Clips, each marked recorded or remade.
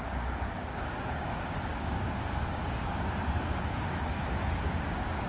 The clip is remade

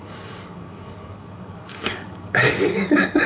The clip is remade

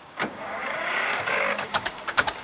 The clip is remade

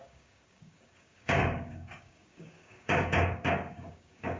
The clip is remade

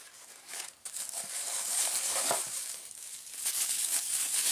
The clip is remade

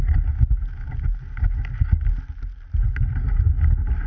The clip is recorded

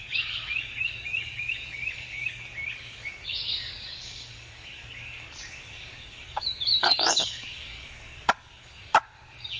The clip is remade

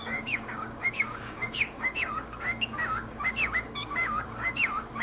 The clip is remade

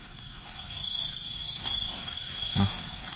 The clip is remade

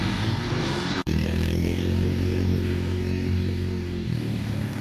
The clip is remade